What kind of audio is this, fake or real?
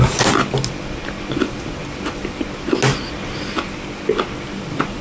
real